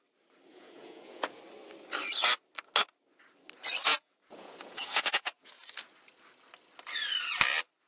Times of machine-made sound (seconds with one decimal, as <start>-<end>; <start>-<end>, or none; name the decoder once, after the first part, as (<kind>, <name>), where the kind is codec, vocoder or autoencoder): 0.5-1.4 (vocoder, Vocos); 3.9-5.5